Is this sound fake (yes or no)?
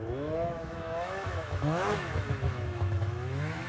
yes